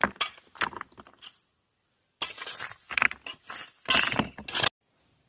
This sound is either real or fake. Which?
real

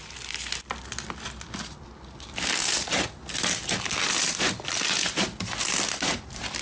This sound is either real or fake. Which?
real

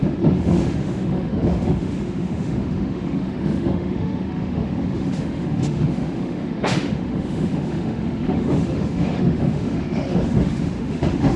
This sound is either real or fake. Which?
fake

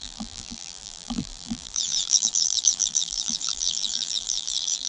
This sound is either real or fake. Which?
fake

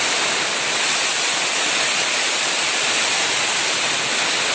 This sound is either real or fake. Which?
fake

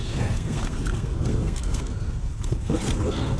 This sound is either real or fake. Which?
fake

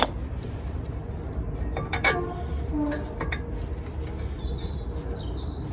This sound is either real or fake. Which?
real